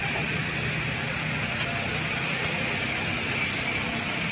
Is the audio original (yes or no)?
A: yes